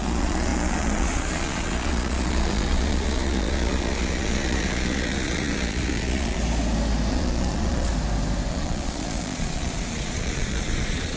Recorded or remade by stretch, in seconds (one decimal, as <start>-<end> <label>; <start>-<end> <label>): 0.0-6.4 remade; 6.4-7.1 recorded; 7.1-7.9 remade; 7.9-8.5 recorded; 8.5-11.2 remade